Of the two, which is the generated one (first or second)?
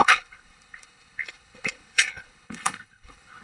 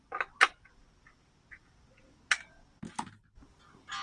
first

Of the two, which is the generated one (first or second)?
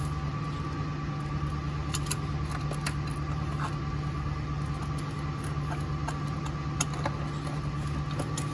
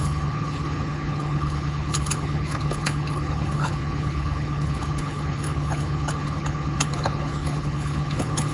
second